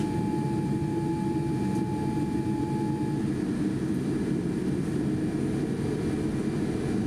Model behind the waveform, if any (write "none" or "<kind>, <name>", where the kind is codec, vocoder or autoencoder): none